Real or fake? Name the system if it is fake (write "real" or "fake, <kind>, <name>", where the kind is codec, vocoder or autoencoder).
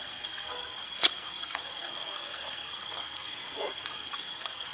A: fake, codec, SNAC